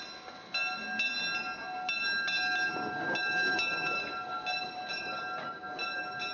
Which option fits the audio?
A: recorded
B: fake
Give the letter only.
A